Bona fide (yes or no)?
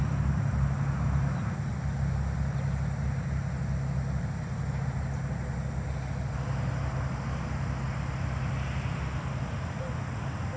yes